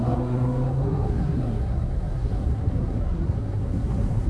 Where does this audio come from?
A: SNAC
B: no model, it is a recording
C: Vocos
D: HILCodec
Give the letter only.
A